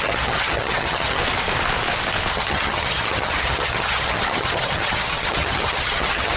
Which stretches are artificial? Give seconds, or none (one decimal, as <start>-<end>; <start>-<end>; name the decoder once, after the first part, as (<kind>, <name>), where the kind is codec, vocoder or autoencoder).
0.0-1.2 (vocoder, HiFi-GAN); 2.3-6.4